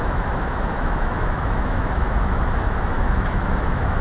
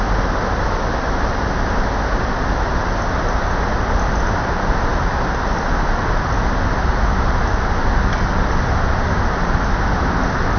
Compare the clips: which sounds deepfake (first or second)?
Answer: first